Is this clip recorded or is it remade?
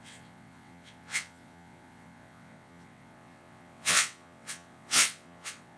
remade